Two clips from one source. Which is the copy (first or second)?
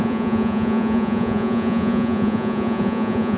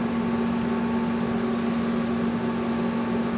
first